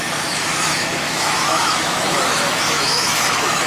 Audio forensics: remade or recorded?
remade